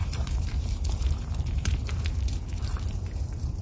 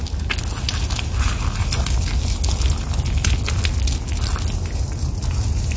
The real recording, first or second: second